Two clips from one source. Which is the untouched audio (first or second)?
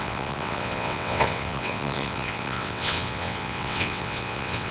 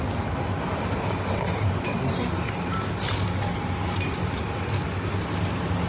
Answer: second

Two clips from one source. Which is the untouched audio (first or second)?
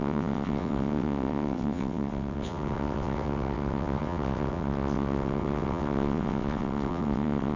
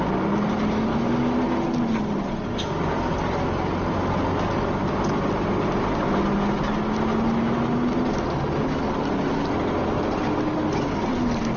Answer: second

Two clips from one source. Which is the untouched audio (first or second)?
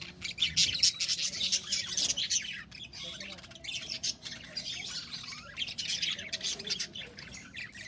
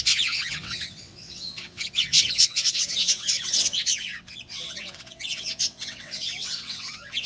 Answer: first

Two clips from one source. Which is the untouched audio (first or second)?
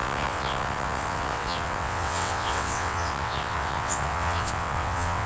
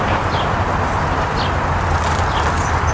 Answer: second